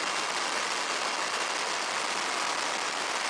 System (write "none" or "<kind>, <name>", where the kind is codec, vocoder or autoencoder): none